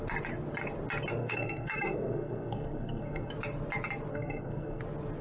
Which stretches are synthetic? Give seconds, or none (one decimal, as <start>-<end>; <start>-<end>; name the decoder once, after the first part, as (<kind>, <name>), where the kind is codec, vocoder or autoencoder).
1.2-3.3 (codec, SNAC); 4.1-4.8